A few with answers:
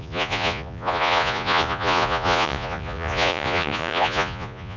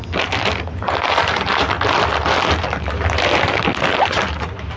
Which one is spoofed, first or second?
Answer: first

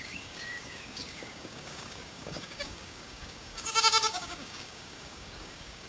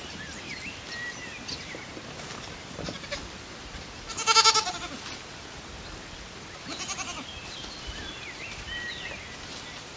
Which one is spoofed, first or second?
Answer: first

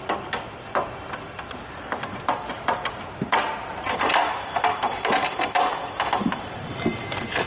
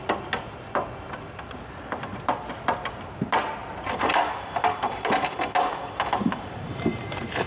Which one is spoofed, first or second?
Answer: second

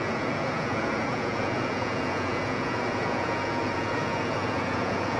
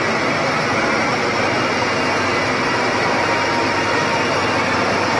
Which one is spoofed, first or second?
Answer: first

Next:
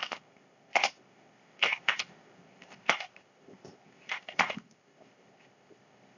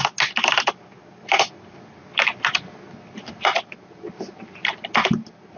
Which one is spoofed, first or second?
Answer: first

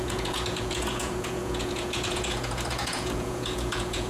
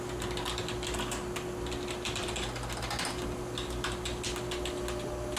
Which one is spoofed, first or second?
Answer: first